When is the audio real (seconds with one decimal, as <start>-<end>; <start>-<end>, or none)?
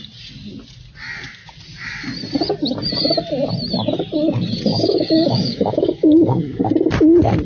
0.0-4.7; 6.6-7.5